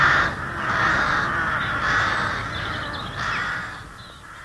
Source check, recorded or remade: recorded